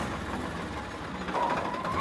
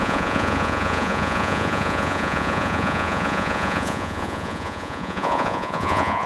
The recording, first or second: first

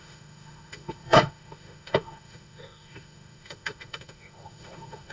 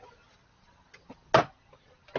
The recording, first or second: second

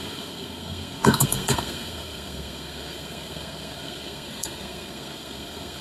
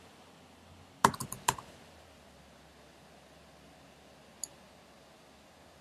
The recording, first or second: second